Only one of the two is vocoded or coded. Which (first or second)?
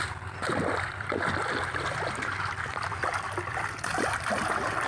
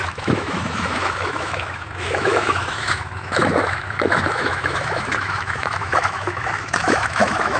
second